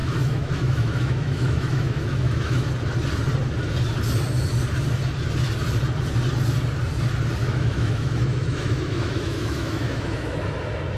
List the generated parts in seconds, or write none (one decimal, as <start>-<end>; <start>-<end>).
0.0-2.7; 7.4-10.4

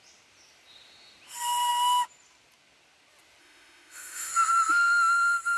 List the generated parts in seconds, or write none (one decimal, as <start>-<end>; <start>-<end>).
3.4-4.3

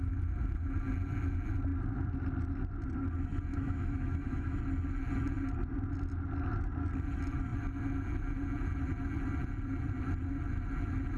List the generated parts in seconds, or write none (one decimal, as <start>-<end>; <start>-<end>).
3.5-4.6

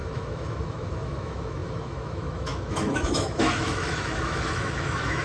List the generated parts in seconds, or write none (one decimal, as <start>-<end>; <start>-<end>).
0.0-5.2